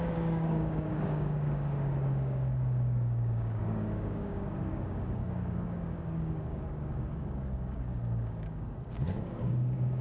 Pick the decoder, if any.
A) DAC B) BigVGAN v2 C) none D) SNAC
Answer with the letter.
A